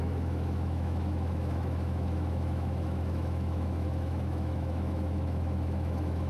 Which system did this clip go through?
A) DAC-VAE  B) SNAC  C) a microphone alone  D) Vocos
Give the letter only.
A